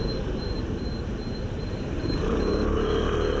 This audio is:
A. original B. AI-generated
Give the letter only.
B